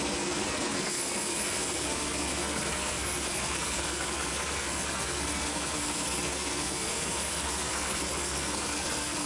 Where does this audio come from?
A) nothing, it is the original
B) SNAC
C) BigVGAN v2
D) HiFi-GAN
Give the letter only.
B